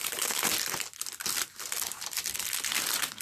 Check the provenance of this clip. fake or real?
fake